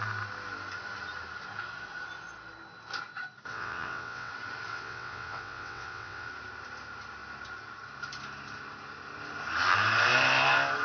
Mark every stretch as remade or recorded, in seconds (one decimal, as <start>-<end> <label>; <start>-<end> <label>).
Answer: 0.0-3.5 recorded; 3.5-4.3 remade; 4.3-4.7 recorded; 4.7-6.3 remade; 6.3-10.8 recorded